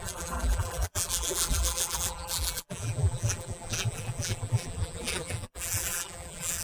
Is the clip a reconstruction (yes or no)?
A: yes